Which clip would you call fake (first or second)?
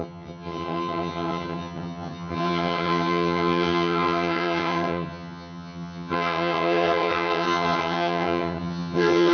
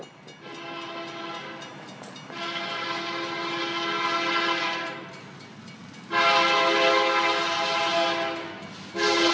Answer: first